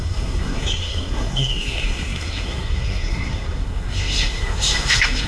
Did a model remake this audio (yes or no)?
yes